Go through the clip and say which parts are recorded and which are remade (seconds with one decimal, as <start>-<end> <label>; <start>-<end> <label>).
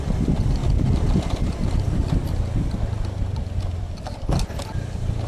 0.0-5.3 recorded